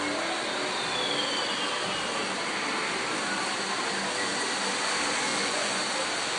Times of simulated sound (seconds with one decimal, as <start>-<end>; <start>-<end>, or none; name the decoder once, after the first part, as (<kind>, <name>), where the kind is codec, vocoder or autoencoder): 5.3-5.8 (vocoder, Vocos)